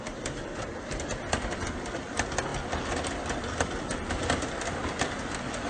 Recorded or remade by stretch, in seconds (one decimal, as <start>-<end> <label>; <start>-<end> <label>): 0.0-2.5 remade; 2.5-3.4 recorded; 3.4-5.7 remade